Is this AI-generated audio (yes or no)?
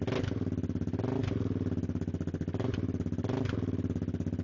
no